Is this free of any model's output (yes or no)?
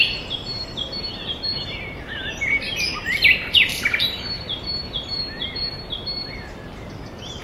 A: no